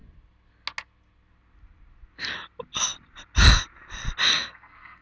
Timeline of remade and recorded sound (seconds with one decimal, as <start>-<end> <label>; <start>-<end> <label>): 0.0-4.3 recorded; 4.3-5.0 remade